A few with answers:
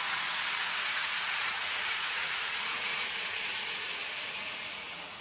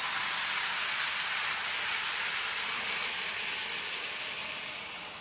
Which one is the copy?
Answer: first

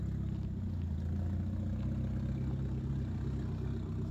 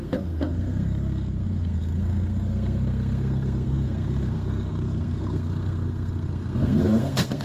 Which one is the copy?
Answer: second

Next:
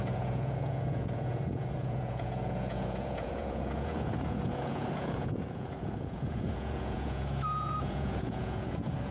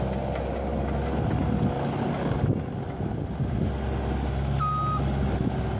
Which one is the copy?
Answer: first